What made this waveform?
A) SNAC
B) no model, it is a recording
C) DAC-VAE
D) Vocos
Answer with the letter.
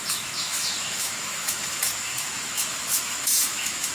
C